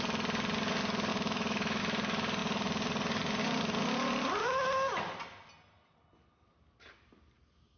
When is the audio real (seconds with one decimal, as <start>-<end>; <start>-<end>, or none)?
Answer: 0.0-1.1; 1.8-7.8